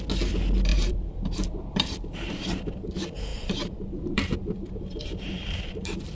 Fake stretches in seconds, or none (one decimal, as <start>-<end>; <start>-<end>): 0.7-2.9; 3.3-6.1